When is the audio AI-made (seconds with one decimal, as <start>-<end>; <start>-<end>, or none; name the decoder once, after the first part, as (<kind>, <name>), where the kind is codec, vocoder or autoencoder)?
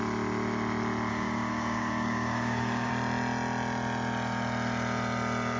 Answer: 1.1-2.9 (codec, DAC)